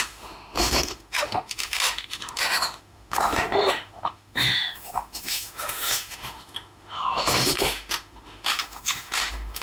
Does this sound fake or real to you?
fake